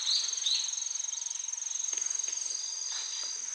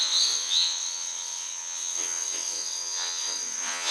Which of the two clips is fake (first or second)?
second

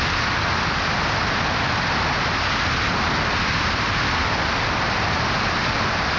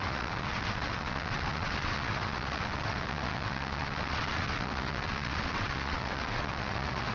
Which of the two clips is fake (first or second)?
second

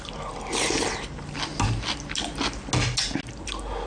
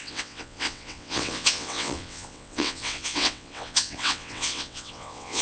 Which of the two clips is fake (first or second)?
second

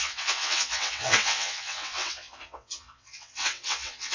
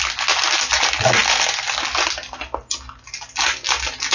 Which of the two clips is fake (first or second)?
first